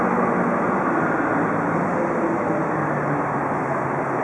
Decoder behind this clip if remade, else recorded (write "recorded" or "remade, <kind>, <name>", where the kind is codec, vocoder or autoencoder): recorded